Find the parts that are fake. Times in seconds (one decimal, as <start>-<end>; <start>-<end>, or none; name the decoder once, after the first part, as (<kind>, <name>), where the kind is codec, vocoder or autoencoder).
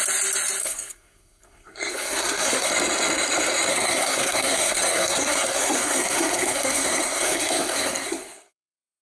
0.6-2.7 (codec, SNAC); 3.7-9.0